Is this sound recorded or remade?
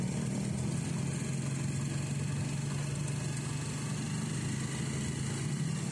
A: recorded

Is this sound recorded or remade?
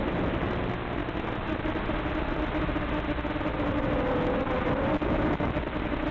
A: recorded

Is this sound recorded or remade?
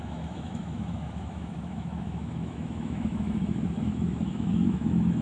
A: remade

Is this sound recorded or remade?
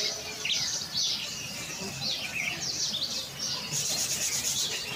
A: recorded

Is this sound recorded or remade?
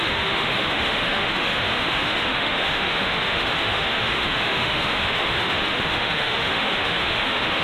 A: remade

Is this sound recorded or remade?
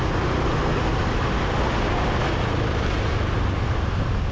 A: recorded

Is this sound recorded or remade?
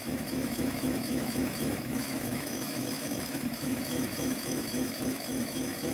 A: remade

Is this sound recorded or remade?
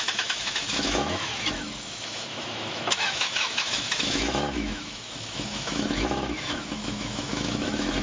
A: remade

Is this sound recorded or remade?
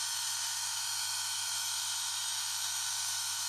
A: remade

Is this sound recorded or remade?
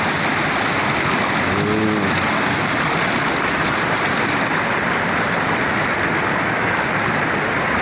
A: recorded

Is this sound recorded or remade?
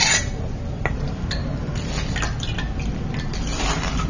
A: recorded